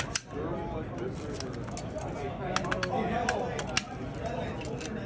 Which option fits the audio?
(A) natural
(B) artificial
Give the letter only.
A